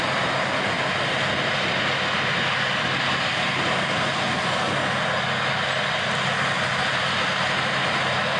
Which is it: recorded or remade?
recorded